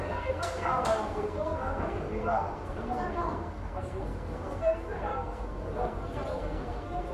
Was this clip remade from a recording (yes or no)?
yes